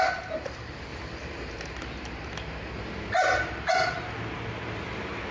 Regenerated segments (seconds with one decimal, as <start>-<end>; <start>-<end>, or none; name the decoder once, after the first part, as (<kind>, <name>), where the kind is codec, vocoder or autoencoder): none